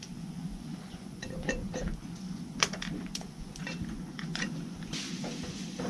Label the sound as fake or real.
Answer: fake